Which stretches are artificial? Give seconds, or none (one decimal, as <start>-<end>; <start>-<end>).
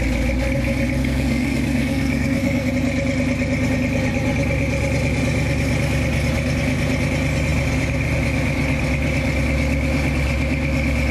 1.0-2.7